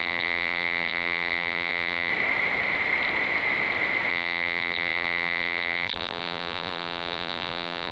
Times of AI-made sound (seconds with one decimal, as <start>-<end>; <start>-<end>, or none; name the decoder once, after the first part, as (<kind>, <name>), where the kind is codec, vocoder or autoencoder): 0.0-2.1 (vocoder, BigVGAN v2); 4.1-7.9